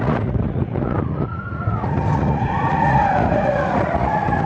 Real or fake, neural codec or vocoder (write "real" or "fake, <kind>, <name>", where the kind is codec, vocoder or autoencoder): fake, vocoder, Vocos